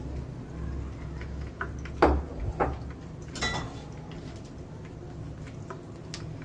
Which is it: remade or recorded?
recorded